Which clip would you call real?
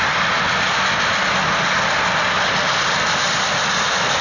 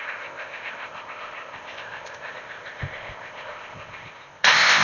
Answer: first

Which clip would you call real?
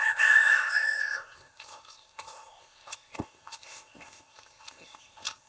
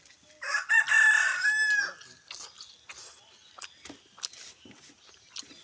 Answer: second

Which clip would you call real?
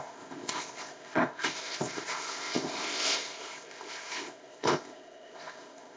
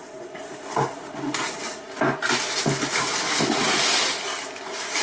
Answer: second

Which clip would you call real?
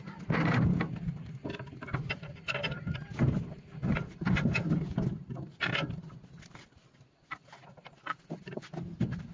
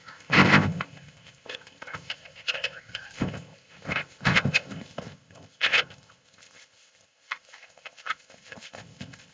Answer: first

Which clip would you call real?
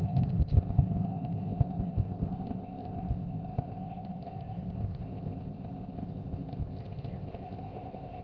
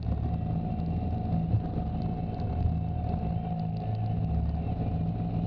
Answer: second